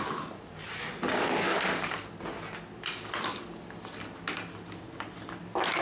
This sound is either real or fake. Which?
real